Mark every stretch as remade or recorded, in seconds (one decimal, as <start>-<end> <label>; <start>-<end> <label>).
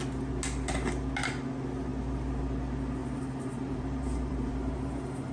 0.0-3.0 recorded; 3.0-5.3 remade